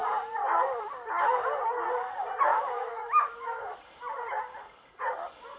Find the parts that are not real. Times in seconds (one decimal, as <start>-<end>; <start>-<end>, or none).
2.5-3.8